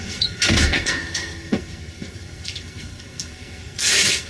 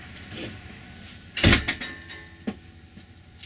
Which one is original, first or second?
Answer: second